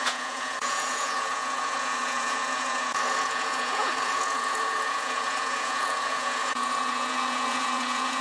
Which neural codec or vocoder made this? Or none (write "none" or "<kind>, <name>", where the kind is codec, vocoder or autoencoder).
vocoder, Vocos